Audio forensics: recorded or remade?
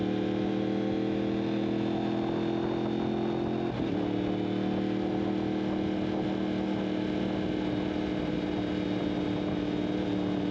recorded